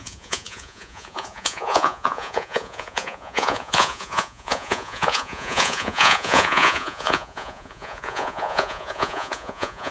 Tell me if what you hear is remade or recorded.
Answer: remade